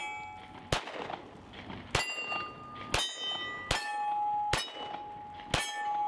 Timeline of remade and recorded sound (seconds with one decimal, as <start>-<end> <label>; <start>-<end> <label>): 0.0-6.1 recorded